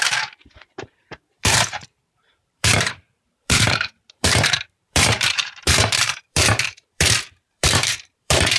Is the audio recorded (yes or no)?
no